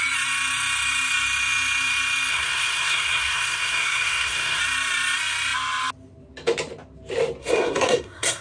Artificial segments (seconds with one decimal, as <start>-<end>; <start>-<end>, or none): 2.3-4.6; 7.4-8.4